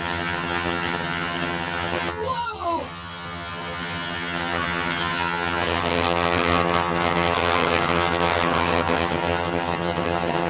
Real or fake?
fake